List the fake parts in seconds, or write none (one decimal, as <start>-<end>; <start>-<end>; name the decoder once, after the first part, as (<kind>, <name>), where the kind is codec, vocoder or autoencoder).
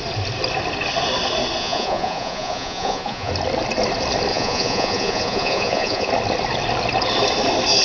1.6-3.3 (vocoder, Vocos); 4.3-6.1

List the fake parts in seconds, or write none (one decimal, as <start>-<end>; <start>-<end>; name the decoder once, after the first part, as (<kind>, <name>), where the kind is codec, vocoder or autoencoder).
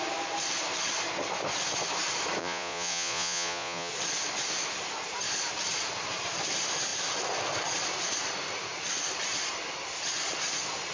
2.4-3.9 (vocoder, Vocos)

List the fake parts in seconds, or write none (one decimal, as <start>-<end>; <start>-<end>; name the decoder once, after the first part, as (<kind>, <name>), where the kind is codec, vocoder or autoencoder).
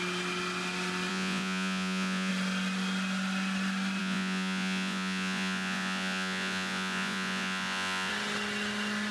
1.1-2.3 (vocoder, Vocos); 4.0-8.1